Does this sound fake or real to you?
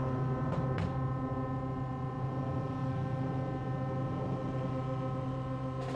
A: real